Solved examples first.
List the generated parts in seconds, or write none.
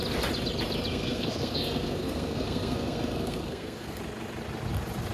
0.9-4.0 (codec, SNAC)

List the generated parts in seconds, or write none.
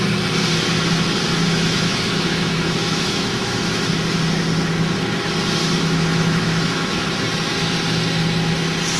1.3-3.9 (autoencoder, DAC-VAE); 5.6-7.0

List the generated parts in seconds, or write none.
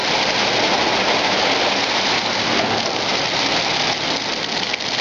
none